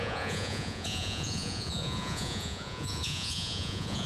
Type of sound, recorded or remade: remade